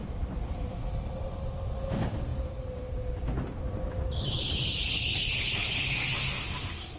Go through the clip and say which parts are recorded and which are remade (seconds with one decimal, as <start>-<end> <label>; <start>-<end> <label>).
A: 0.0-0.8 remade; 0.8-2.3 recorded; 2.3-5.9 remade; 5.9-7.0 recorded